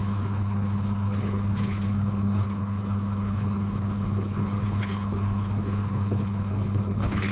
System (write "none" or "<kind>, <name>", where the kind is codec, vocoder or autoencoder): codec, HILCodec